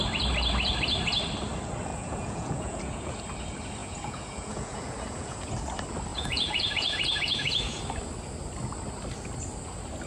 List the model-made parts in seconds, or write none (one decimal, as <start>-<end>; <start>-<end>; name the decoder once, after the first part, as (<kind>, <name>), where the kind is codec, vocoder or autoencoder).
1.9-3.2 (vocoder, Vocos); 3.8-5.5; 6.1-7.8